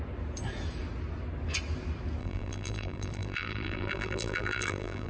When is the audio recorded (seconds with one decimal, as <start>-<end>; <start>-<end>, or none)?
0.0-2.2